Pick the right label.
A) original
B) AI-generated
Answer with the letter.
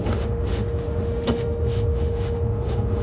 B